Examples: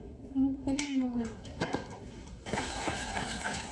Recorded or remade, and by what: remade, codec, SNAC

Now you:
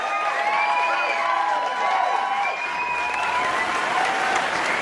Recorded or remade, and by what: recorded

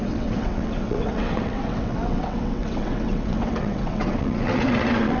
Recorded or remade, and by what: remade, vocoder, WaveNeXt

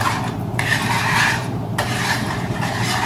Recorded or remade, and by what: remade, vocoder, BigVGAN v2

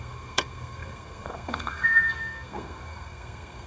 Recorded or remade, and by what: remade, codec, SNAC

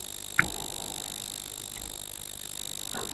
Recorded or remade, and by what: recorded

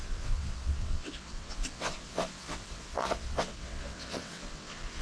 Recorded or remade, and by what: remade, vocoder, WaveNeXt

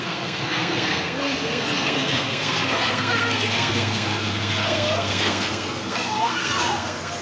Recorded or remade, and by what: remade, codec, SNAC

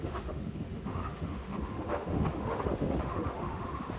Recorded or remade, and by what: remade, autoencoder, DAC-VAE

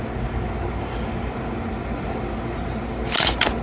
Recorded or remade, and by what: recorded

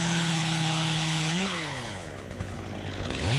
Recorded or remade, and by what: remade, codec, HILCodec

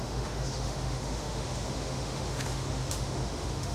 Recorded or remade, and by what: remade, autoencoder, DAC-VAE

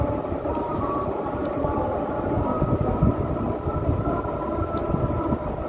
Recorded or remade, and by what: remade, vocoder, BigVGAN v2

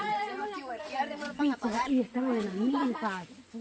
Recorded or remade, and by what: remade, vocoder, Vocos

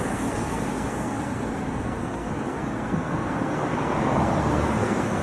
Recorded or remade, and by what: remade, codec, SNAC